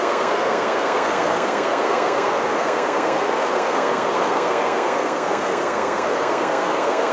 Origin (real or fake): fake